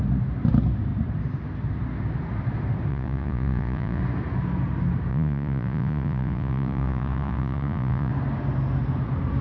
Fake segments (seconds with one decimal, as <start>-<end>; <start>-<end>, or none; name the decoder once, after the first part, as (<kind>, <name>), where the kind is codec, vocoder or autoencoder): 2.9-4.0 (vocoder, Vocos); 5.1-8.1